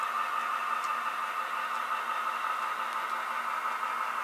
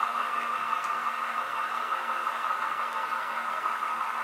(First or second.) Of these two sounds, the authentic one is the first